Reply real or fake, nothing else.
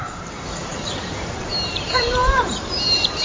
fake